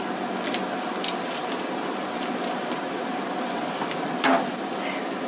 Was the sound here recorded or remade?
recorded